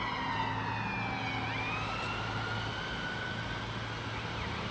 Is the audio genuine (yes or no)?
yes